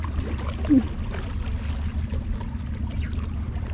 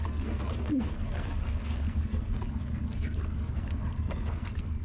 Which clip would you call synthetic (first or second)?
second